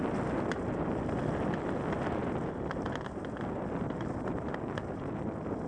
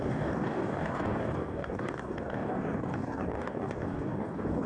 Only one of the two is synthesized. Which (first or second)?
second